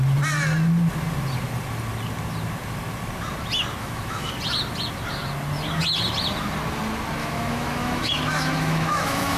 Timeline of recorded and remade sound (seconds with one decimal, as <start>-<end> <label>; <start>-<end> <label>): 0.0-3.8 recorded; 3.8-4.3 remade; 4.3-7.2 recorded; 7.2-9.4 remade